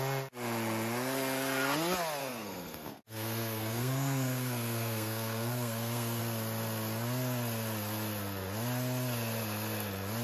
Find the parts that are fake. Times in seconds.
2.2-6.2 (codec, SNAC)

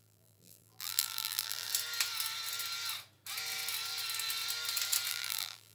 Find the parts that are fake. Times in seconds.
0.0-1.7 (vocoder, BigVGAN v2); 5.1-5.7

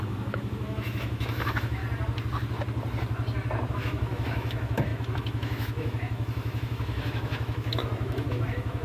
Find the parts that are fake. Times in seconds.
0.0-1.8 (autoencoder, DAC-VAE); 3.7-8.8

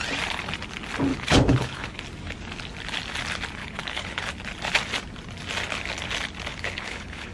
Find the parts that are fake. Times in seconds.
1.1-2.0 (codec, HILCodec); 3.6-4.3; 6.5-7.3

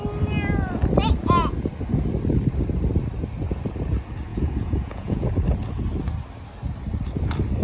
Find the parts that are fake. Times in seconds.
4.3-5.3 (vocoder, Vocos)

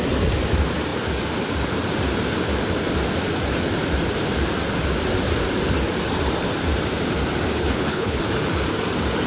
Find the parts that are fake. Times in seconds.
7.5-8.2 (codec, HILCodec)

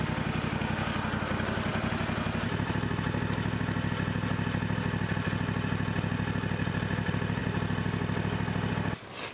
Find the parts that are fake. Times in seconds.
none